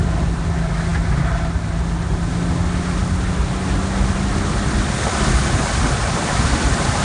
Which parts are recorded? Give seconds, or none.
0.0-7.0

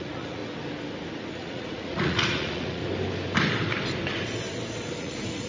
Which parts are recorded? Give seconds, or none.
0.4-1.3; 2.8-5.0

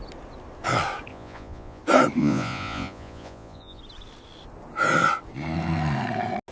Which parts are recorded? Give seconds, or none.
0.0-1.1; 1.8-2.2; 3.8-6.5

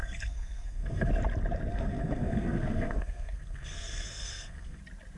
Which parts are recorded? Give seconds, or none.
1.1-1.7; 4.8-5.2

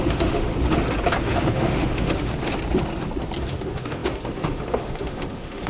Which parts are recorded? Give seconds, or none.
0.5-1.2; 2.3-3.4

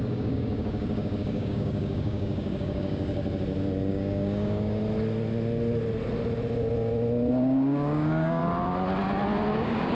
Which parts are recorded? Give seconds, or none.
3.2-3.9; 4.8-7.3; 8.4-9.5